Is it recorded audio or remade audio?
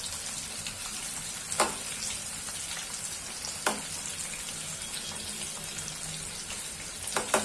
recorded